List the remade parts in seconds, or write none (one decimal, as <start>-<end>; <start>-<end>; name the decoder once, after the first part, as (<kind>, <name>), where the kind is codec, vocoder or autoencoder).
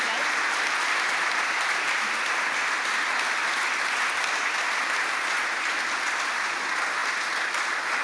none